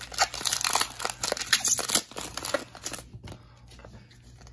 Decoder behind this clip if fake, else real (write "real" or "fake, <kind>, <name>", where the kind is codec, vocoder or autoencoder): real